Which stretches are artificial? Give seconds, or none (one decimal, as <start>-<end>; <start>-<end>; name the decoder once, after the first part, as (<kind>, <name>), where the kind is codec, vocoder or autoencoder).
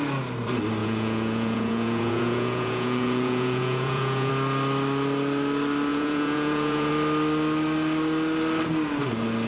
0.8-4.3 (vocoder, Vocos); 5.9-6.9